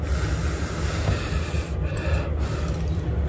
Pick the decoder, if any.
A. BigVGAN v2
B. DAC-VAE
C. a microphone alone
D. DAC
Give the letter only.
C